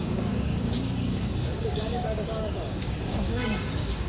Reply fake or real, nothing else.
fake